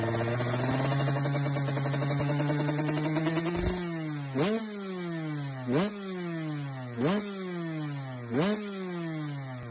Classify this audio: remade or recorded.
recorded